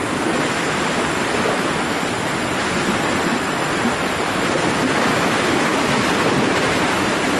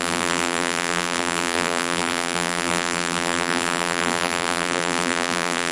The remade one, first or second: second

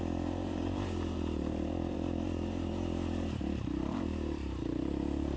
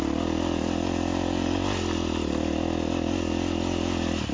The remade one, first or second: first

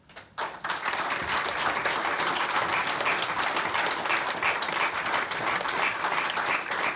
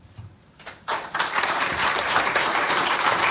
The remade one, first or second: second